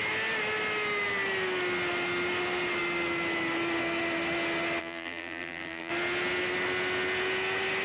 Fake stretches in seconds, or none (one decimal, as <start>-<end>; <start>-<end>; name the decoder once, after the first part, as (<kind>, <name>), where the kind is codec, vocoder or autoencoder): 4.8-5.9 (vocoder, BigVGAN v2)